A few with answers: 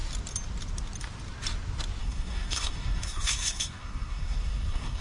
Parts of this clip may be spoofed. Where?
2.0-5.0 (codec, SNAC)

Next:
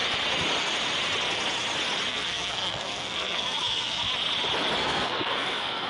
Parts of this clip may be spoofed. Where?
2.1-4.1 (codec, SNAC); 4.8-5.9

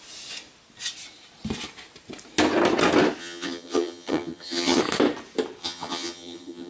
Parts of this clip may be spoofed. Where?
3.2-4.8 (vocoder, HiFi-GAN); 5.6-6.7